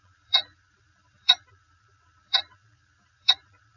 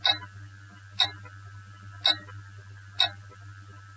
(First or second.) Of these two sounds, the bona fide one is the second